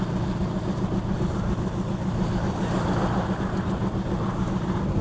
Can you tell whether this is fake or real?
real